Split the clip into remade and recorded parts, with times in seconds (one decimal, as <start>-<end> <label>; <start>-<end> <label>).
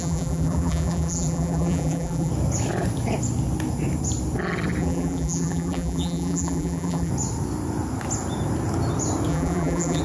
0.0-2.3 remade; 2.3-4.8 recorded; 4.8-7.1 remade; 7.1-9.3 recorded; 9.3-10.0 remade